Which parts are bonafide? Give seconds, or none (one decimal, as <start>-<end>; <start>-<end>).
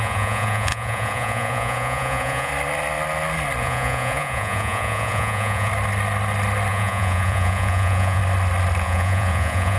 2.5-3.6; 5.7-6.7; 8.2-8.8